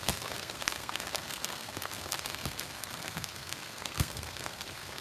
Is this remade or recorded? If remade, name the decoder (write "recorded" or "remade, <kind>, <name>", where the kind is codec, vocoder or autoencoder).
remade, codec, SNAC